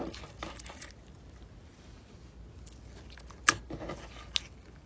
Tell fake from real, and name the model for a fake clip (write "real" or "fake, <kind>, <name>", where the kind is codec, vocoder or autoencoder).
real